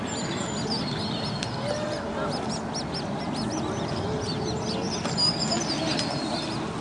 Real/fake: real